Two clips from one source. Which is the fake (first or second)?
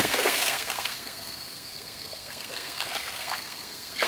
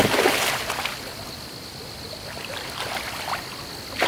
first